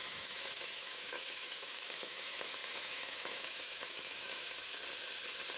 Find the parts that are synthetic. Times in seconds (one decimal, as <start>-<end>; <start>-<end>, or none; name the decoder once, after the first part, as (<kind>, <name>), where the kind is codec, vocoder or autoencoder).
0.0-4.7 (autoencoder, DAC-VAE)